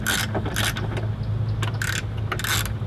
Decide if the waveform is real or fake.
real